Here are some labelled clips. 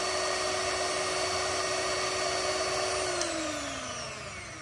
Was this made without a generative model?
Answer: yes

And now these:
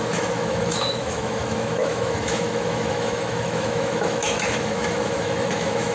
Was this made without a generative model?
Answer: no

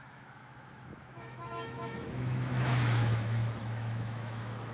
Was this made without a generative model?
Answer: no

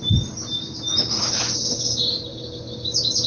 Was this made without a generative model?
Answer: yes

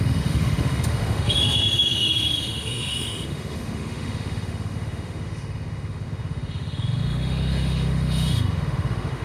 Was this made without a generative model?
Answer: no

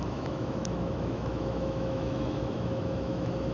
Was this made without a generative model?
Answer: no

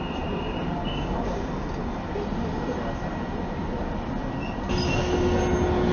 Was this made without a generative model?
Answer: yes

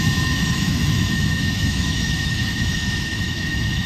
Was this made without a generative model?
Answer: no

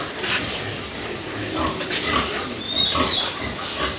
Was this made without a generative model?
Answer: yes